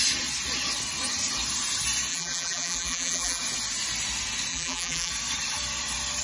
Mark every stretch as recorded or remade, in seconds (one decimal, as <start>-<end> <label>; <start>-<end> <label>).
0.0-2.1 recorded; 2.1-3.4 remade; 3.4-4.5 recorded; 4.5-5.1 remade; 5.1-6.2 recorded